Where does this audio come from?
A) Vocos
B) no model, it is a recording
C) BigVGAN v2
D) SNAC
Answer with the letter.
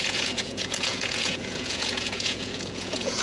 A